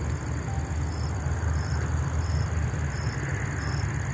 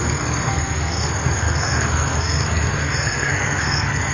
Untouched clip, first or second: first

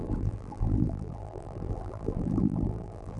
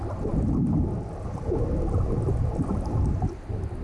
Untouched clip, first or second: second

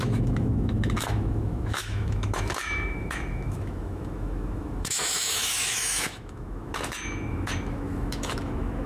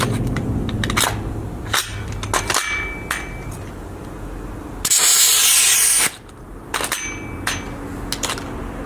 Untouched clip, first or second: second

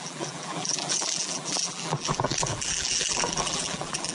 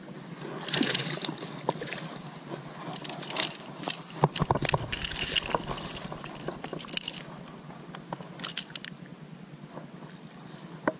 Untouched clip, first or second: second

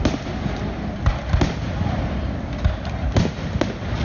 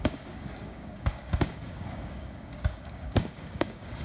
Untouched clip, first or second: first